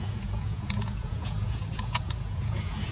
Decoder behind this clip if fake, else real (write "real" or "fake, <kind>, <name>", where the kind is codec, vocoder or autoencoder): fake, vocoder, Vocos